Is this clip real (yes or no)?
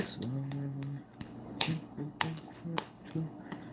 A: no